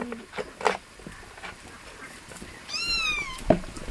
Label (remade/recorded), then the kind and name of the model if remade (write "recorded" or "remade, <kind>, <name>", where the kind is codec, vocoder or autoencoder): remade, vocoder, BigVGAN v2